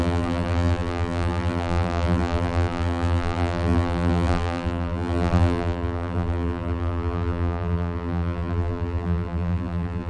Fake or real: fake